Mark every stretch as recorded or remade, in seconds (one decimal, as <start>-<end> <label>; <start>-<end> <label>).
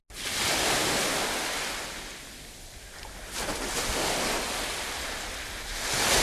0.0-6.2 recorded